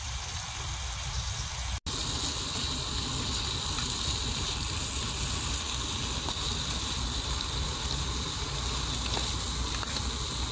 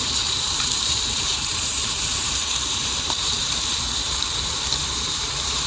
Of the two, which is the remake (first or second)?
second